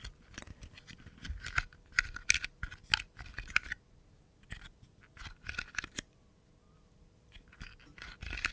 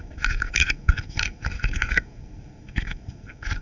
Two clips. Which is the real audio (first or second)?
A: first